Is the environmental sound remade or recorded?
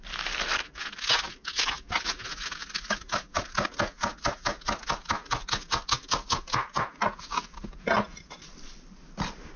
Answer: recorded